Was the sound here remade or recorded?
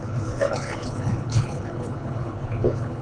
remade